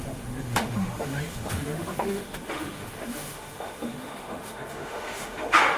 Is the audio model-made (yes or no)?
yes